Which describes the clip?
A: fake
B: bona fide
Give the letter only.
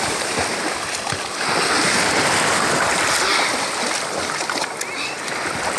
B